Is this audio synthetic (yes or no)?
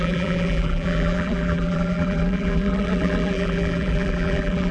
yes